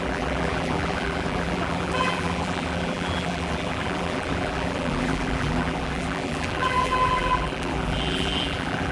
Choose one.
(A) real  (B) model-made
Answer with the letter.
B